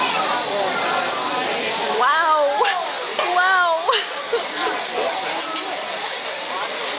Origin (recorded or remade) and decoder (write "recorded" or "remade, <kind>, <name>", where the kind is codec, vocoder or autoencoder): recorded